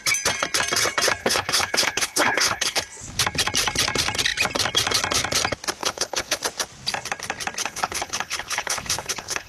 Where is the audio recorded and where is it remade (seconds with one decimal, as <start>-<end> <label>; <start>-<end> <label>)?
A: 0.0-1.2 recorded; 1.2-2.8 remade; 2.8-5.8 recorded; 5.8-6.4 remade; 6.4-7.6 recorded; 7.6-9.5 remade